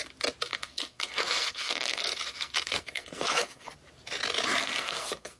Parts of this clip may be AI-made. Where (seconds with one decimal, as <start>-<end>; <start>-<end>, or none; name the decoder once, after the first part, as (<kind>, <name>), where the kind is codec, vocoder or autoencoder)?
0.5-3.7 (codec, SNAC); 4.6-5.4